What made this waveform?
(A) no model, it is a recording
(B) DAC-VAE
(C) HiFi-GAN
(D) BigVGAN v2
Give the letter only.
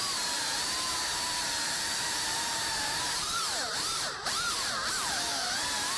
D